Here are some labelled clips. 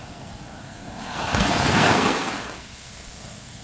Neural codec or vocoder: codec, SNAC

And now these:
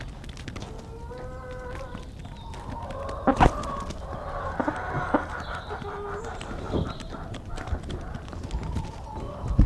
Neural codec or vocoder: none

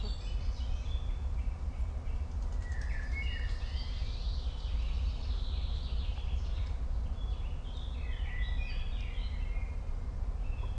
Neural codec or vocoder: none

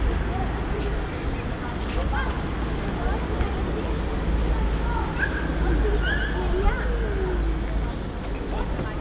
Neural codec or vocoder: none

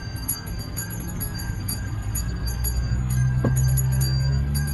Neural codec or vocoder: codec, SNAC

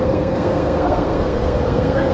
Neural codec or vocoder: codec, SNAC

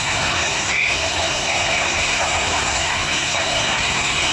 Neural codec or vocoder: codec, SNAC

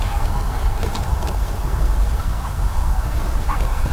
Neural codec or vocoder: codec, SNAC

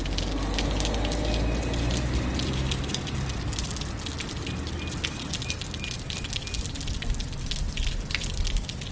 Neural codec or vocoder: none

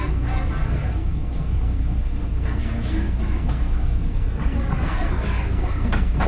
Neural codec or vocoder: codec, SNAC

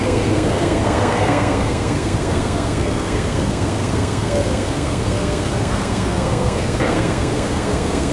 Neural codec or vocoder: codec, SNAC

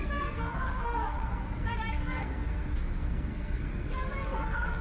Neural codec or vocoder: codec, SNAC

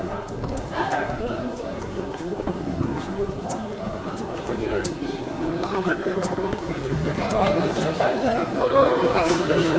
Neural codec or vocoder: codec, SNAC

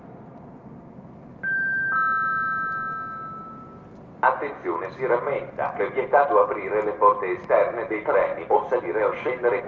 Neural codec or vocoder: none